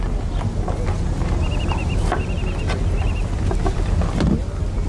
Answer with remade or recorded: recorded